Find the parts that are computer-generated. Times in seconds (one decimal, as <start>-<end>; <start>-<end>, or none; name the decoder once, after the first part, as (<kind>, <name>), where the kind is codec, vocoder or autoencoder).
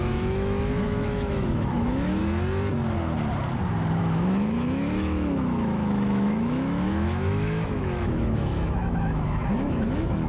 0.0-2.2 (autoencoder, DAC-VAE); 4.0-10.3